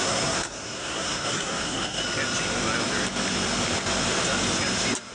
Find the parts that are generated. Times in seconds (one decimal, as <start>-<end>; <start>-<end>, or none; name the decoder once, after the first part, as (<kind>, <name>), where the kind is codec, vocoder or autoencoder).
0.0-2.0 (codec, SNAC)